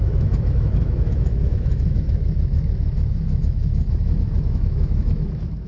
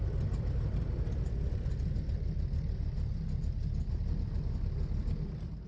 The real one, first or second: second